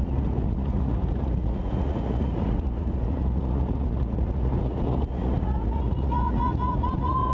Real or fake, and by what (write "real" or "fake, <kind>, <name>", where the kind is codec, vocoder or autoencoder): fake, vocoder, Vocos